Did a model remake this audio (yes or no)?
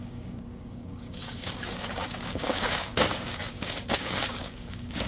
yes